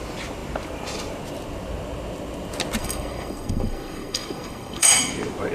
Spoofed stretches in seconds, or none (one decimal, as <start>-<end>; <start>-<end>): 2.8-5.1